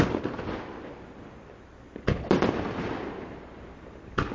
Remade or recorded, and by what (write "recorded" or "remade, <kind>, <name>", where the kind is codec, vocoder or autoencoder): recorded